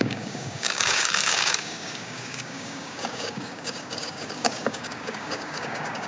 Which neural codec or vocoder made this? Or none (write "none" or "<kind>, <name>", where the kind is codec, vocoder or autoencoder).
codec, DAC